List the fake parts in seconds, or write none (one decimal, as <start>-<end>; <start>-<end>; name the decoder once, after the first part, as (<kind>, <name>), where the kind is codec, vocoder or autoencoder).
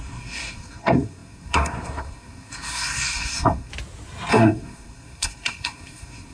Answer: 0.0-3.7 (codec, SNAC); 4.3-6.3